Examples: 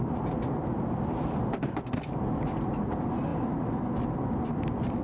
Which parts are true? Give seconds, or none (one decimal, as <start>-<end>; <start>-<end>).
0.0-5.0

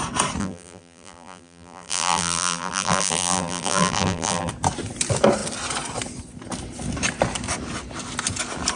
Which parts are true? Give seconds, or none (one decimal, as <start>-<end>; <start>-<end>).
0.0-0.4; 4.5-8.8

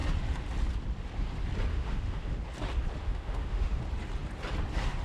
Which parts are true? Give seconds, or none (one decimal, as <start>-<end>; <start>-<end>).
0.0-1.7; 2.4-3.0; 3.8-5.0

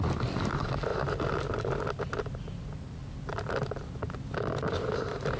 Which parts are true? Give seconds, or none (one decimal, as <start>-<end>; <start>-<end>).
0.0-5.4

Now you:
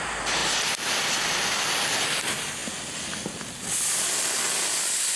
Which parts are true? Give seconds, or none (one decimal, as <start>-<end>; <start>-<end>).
0.0-5.2

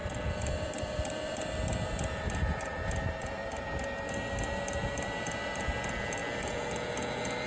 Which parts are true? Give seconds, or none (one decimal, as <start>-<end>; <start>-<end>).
3.6-7.5

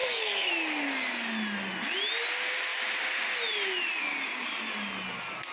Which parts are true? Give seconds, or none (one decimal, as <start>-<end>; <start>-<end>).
0.5-5.5

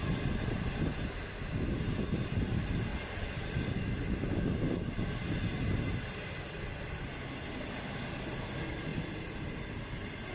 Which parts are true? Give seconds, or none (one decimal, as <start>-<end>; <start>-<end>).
0.0-2.9; 3.5-10.3